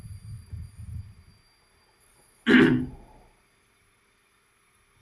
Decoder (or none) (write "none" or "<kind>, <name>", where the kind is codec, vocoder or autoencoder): none